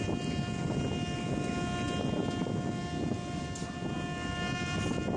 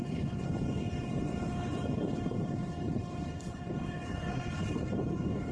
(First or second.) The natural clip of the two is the first